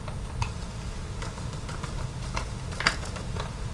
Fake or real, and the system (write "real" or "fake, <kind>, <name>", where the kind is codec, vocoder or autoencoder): real